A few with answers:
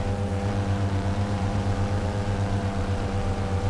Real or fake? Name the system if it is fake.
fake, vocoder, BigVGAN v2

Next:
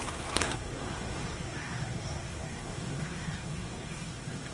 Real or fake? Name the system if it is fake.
fake, codec, SNAC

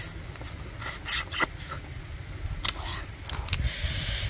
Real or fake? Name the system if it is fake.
real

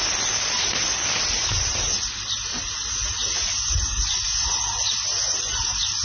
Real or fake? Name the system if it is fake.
real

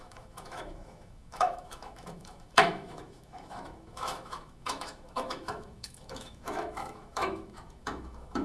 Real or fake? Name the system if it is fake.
fake, autoencoder, DAC-VAE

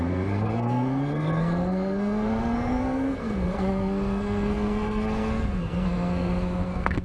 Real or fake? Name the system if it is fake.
fake, codec, SNAC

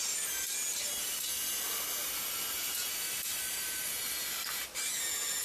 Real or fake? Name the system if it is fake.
real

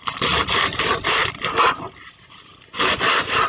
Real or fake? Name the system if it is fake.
fake, vocoder, BigVGAN v2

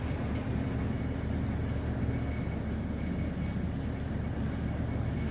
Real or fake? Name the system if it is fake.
real